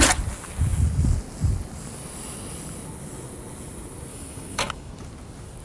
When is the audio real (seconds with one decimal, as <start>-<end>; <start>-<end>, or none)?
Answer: 0.0-4.1; 4.9-5.6